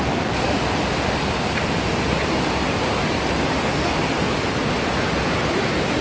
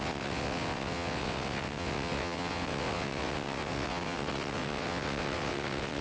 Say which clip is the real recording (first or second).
first